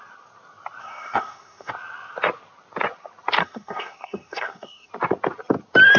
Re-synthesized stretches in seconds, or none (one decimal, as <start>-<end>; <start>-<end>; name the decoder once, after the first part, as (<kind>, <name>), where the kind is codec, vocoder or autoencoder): 0.8-1.7 (codec, SNAC); 3.4-4.9